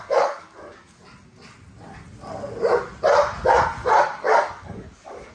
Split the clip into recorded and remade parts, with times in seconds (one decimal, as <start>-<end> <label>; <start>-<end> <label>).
0.0-1.0 remade; 1.0-4.2 recorded; 4.2-5.3 remade